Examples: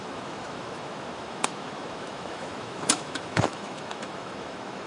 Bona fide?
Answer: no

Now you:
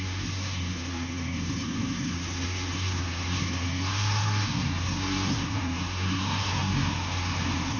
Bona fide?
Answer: no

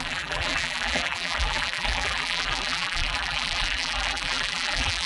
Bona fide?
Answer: no